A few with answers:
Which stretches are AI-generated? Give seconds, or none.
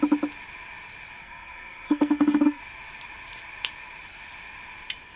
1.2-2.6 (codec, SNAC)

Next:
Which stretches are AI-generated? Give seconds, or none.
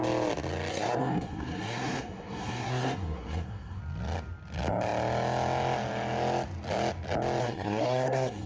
0.7-3.8 (codec, SNAC); 7.4-8.5